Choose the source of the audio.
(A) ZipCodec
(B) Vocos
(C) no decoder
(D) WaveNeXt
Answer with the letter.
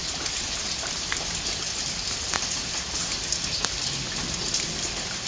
C